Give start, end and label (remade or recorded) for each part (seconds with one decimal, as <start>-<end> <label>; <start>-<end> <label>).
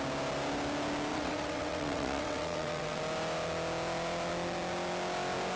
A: 0.0-1.1 recorded; 1.1-3.0 remade; 3.0-5.6 recorded